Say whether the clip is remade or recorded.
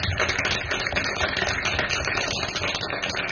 recorded